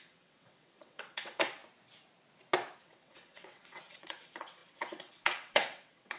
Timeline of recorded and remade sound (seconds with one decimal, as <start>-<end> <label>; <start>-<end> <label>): 0.0-1.6 remade; 1.6-2.8 recorded; 2.8-6.2 remade